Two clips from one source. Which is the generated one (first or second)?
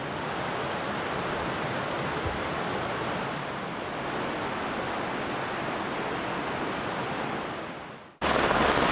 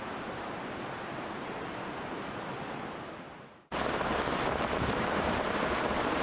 second